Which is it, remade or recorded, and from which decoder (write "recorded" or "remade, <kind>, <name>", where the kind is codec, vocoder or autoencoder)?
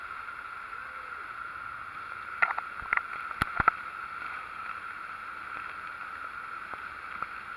recorded